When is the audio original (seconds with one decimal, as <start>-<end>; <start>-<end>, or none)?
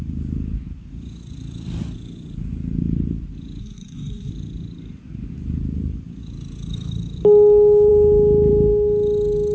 0.0-3.6; 4.3-9.5